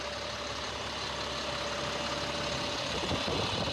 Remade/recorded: recorded